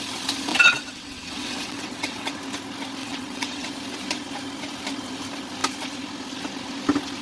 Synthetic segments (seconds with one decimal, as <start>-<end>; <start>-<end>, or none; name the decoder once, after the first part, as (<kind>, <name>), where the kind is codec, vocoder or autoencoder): 0.5-2.4 (vocoder, WaveNeXt); 3.0-3.7